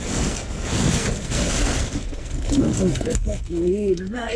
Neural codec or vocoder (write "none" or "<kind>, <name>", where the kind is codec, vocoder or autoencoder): codec, SNAC